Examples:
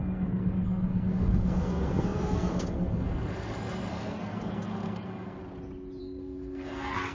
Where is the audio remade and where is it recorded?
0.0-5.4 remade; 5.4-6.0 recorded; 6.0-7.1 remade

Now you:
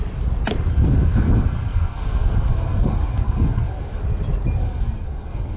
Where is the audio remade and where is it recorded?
0.0-0.7 recorded; 0.7-4.0 remade; 4.0-4.6 recorded; 4.6-5.6 remade